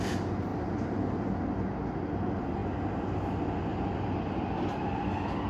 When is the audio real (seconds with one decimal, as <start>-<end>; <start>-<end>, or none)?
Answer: 0.0-5.5